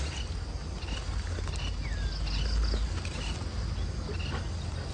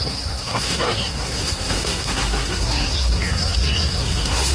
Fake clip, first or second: second